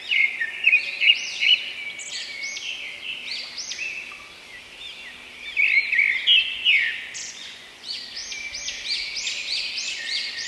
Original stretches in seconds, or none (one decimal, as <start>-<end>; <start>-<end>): 1.5-6.4; 8.2-9.9